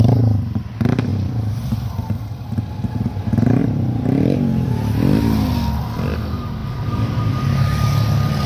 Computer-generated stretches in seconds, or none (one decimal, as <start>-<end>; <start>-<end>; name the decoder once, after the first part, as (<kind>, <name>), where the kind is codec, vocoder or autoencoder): 1.1-3.2 (vocoder, BigVGAN v2); 3.6-4.7; 6.6-7.4

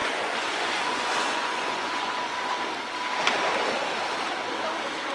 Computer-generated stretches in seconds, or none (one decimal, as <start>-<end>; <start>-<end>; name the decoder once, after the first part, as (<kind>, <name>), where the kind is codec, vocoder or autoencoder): 0.0-2.5 (vocoder, Vocos)

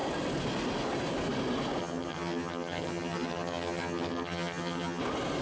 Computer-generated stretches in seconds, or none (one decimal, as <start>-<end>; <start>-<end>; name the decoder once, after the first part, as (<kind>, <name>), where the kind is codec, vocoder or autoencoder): 1.8-5.0 (vocoder, HiFi-GAN)

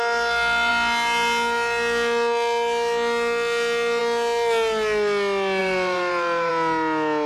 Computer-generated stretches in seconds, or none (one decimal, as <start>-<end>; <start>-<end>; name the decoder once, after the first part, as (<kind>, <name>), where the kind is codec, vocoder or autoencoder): 5.6-6.5 (vocoder, BigVGAN v2)

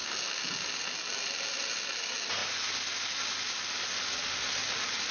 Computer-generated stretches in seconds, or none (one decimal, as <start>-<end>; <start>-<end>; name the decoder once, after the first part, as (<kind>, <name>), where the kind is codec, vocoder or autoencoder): none